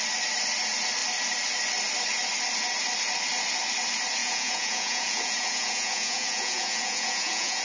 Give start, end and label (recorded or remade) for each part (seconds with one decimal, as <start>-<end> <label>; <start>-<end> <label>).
0.0-4.2 recorded; 4.2-7.6 remade